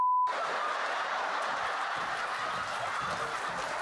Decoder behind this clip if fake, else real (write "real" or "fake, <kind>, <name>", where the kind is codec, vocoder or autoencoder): real